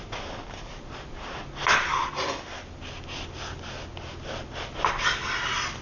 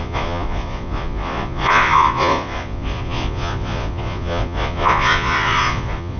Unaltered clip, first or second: first